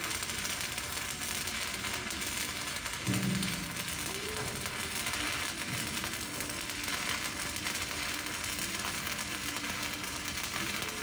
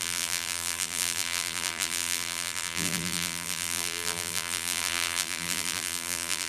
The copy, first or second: second